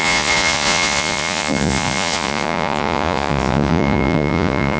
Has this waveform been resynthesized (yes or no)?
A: yes